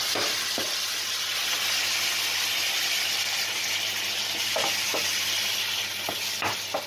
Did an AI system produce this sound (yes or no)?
no